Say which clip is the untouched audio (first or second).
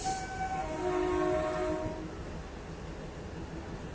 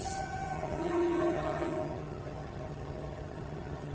first